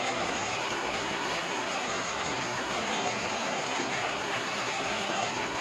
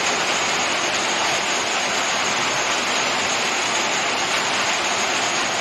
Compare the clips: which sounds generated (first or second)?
first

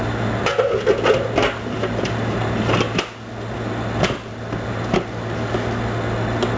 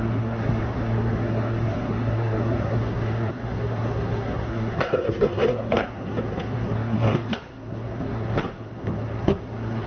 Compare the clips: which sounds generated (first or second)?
second